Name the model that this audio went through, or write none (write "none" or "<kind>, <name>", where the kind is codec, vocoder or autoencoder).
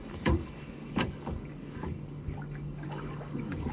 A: codec, DAC